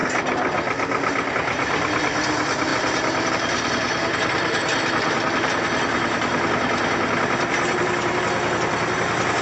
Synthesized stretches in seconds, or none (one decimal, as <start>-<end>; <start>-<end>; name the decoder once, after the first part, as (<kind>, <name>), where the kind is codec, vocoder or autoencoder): none